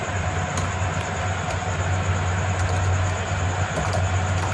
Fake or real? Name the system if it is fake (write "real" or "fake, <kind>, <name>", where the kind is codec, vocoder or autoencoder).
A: real